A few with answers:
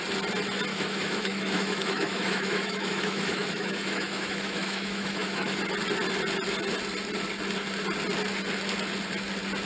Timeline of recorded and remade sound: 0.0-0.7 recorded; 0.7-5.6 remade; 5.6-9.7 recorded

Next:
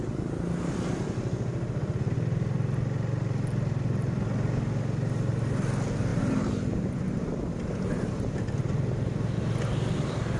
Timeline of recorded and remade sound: 0.0-6.1 recorded; 6.1-6.8 remade; 6.8-10.4 recorded